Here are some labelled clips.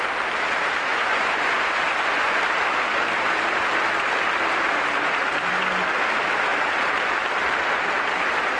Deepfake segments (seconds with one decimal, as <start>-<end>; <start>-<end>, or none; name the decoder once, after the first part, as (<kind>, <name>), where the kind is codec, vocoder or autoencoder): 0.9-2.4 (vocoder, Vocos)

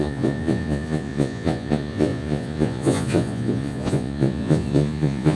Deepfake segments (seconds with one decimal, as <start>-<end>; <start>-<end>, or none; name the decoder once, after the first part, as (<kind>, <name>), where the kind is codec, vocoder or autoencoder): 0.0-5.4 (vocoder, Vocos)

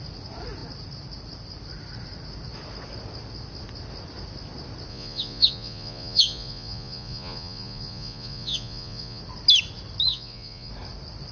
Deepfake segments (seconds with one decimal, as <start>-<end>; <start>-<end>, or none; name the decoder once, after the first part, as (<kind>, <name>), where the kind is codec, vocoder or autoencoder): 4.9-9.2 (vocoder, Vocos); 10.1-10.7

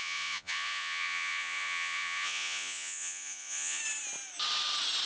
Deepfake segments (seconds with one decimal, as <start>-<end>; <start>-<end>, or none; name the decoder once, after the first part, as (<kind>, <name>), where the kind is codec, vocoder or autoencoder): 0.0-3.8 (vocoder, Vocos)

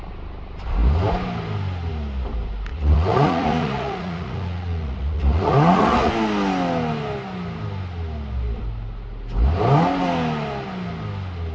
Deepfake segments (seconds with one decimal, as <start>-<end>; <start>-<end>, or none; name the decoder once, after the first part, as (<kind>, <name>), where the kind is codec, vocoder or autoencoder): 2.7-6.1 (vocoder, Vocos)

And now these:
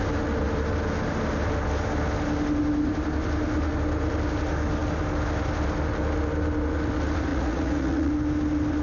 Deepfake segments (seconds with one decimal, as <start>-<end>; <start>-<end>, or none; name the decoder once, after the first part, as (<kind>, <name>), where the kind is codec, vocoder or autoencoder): 7.3-8.1 (vocoder, Vocos)

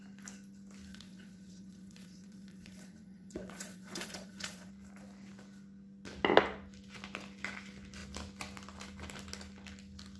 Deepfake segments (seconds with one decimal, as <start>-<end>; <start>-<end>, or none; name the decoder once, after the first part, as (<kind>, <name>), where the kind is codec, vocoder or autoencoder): 0.9-4.7 (vocoder, Vocos)

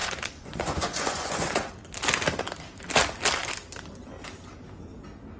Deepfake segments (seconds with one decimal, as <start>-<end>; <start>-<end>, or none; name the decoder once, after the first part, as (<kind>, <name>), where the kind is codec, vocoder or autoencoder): 0.0-1.7 (vocoder, Vocos)